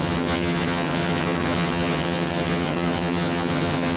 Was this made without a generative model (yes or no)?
no